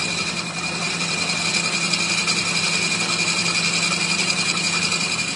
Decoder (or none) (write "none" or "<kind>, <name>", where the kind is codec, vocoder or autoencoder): none